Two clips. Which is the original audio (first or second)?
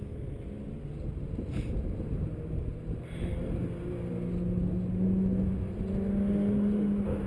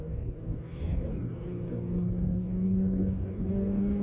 first